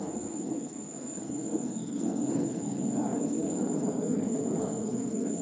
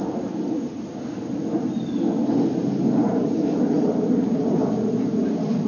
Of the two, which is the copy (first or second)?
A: first